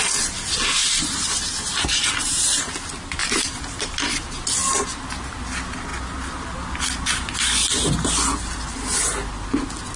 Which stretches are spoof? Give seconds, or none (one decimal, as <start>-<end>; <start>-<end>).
0.8-2.7; 3.2-4.0